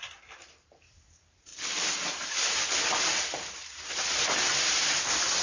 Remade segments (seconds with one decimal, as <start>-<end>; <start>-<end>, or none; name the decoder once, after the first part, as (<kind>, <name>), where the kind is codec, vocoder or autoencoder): 0.0-1.5 (vocoder, BigVGAN v2); 2.0-5.4